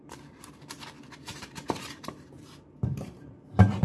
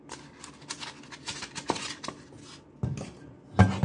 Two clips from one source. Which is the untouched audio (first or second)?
second